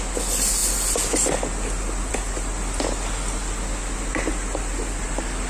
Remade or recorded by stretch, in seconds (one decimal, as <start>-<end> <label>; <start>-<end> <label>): 0.0-5.5 recorded